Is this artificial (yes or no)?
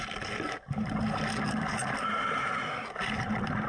no